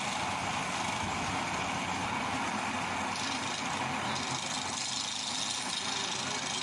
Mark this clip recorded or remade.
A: recorded